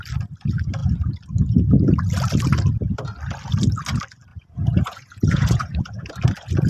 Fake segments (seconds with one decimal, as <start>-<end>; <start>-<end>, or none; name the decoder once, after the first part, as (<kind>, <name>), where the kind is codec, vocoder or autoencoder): 4.3-6.1 (vocoder, Vocos)